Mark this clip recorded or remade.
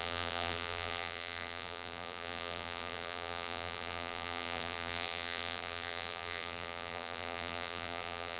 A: remade